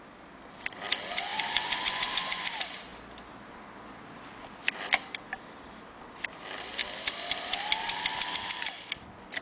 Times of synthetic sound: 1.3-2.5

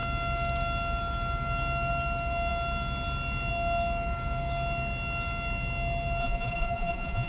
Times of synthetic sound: 6.2-7.3

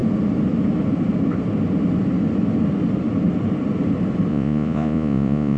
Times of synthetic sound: 4.3-5.6

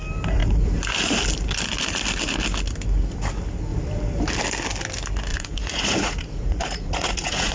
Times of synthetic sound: 5.3-7.5

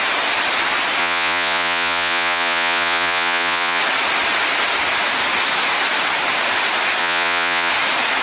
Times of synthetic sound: 1.0-3.8; 7.0-7.7

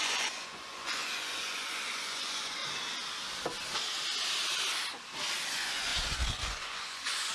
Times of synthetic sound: 0.0-2.6; 5.5-7.3

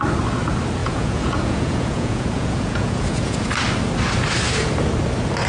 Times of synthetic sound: 0.8-3.5